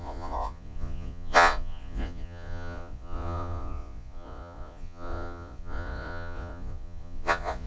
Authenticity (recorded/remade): remade